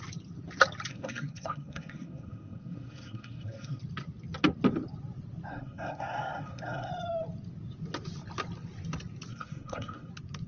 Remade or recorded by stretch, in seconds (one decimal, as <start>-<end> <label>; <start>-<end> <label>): 0.0-0.9 recorded; 0.9-3.8 remade; 3.8-5.5 recorded; 5.5-6.9 remade; 6.9-9.3 recorded; 9.3-10.1 remade; 10.1-10.5 recorded